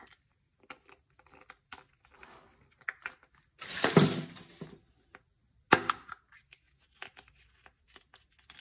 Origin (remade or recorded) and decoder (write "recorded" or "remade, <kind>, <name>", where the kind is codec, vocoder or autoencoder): recorded